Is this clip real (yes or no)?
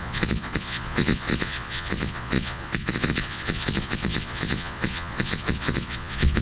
no